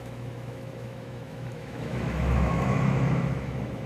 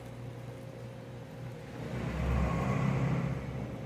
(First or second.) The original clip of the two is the second